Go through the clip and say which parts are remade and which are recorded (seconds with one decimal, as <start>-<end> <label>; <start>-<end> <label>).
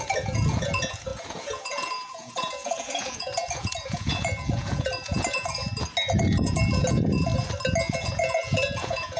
0.0-5.6 remade; 5.6-6.2 recorded; 6.2-7.3 remade; 7.3-8.0 recorded; 8.0-9.2 remade